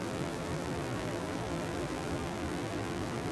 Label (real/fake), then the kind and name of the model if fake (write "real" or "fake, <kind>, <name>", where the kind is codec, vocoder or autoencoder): fake, vocoder, BigVGAN v2